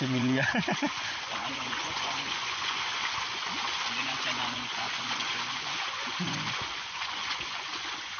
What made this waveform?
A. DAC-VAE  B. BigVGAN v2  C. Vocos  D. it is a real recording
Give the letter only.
C